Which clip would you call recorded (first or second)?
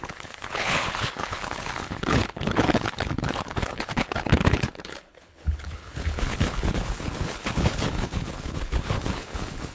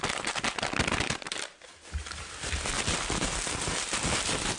second